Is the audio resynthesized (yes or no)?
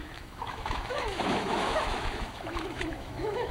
yes